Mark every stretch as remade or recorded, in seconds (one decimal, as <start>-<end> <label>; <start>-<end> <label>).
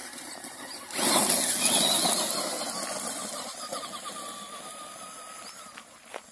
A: 0.0-6.3 recorded